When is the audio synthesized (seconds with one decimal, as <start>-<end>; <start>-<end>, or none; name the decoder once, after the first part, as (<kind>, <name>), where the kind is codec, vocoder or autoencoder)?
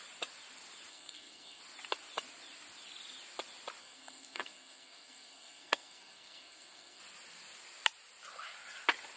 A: 0.9-1.6 (codec, SNAC); 3.8-7.0